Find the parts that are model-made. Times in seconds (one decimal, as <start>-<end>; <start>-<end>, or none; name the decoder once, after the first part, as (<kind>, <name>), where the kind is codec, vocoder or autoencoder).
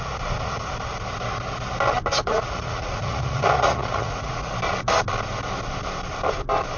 2.2-4.5 (vocoder, Vocos)